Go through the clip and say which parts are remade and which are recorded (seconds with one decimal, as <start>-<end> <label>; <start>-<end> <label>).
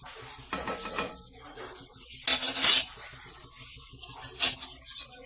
0.0-5.3 recorded